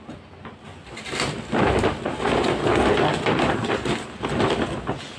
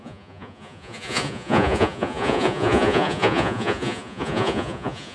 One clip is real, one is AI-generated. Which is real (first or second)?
first